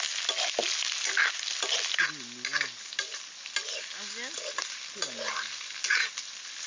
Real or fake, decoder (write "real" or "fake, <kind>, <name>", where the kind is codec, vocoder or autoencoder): real